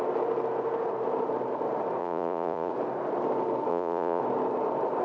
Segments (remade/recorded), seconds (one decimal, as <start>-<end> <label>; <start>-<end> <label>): 0.0-2.0 recorded; 2.0-2.7 remade; 2.7-3.7 recorded; 3.7-4.2 remade; 4.2-5.0 recorded

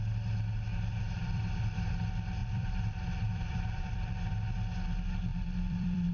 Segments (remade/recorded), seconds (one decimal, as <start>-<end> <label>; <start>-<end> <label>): 0.0-0.7 recorded; 0.7-1.9 remade; 1.9-2.4 recorded; 2.4-4.3 remade; 4.3-5.3 recorded; 5.3-6.1 remade

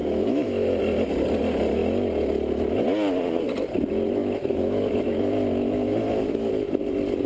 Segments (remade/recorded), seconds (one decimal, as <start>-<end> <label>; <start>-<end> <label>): 0.0-0.8 remade; 0.8-4.2 recorded; 4.2-6.5 remade; 6.5-7.3 recorded

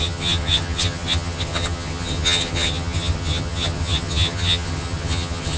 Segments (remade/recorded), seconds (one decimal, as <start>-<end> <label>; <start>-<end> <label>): 0.0-5.6 remade